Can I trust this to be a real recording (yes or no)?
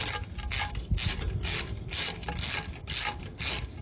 yes